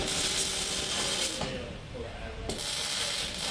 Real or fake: real